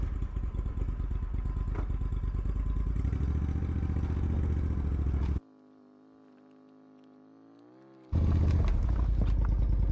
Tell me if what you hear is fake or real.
real